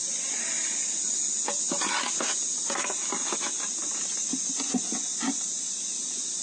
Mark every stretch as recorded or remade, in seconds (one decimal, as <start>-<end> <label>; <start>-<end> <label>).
0.0-6.4 recorded